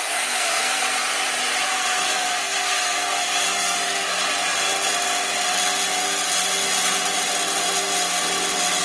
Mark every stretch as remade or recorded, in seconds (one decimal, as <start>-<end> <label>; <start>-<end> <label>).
0.0-1.0 remade; 1.0-1.7 recorded; 1.7-4.2 remade; 4.2-8.8 recorded